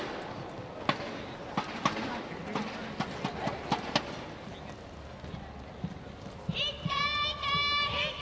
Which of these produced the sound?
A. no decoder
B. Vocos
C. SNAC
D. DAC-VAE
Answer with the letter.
A